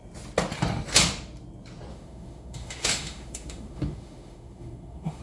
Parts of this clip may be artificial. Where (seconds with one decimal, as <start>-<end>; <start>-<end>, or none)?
1.9-5.2